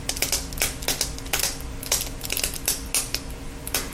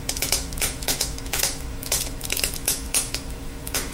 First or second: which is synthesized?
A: second